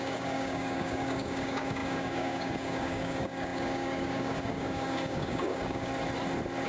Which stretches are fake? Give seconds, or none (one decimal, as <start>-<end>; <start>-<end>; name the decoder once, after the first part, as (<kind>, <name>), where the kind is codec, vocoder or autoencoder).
0.0-5.9 (codec, DAC)